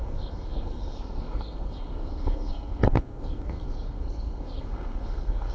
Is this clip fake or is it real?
fake